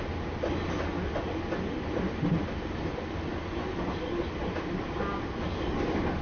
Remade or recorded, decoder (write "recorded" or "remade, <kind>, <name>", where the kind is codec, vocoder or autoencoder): recorded